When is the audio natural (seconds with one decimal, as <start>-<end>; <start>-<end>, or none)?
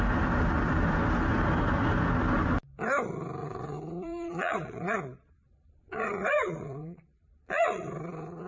0.0-3.4